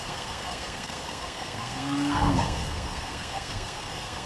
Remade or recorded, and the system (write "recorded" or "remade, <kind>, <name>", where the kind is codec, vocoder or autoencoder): remade, codec, SNAC